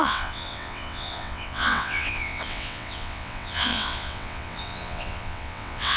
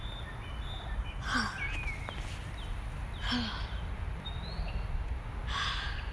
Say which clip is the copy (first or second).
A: first